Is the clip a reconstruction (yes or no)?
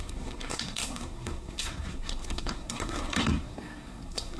yes